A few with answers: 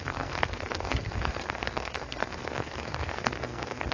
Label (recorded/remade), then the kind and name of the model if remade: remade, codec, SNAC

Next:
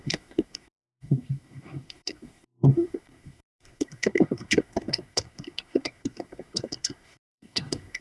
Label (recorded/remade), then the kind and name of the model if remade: remade, codec, SNAC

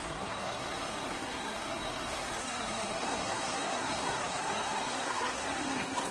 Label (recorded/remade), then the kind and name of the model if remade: remade, codec, SNAC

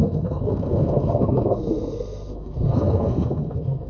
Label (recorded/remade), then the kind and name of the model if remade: remade, codec, SNAC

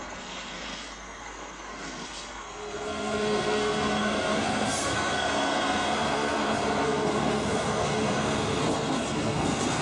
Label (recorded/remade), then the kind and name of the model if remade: remade, codec, SNAC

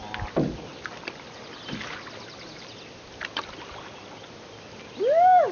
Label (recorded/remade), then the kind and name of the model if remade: recorded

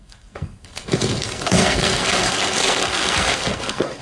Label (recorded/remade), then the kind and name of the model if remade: remade, codec, SNAC